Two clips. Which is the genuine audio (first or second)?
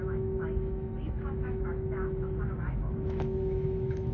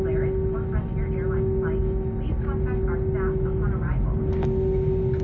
second